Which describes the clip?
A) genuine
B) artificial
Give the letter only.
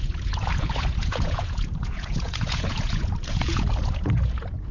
B